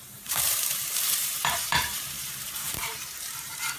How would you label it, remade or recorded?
remade